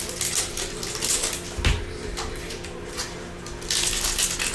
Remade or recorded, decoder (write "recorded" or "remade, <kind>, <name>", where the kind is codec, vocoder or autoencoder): recorded